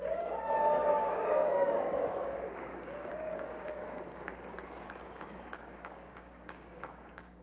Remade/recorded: remade